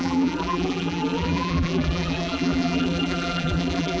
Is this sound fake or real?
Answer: fake